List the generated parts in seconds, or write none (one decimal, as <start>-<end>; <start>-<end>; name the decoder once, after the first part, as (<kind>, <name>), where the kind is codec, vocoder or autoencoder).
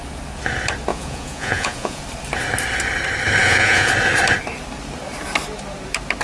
0.9-2.0 (vocoder, Vocos); 3.4-3.9